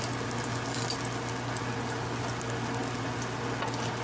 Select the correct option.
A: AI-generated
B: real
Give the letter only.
B